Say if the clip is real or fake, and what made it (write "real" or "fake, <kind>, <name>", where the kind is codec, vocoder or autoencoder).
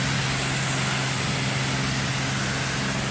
real